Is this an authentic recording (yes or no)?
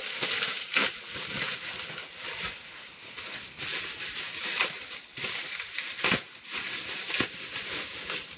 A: no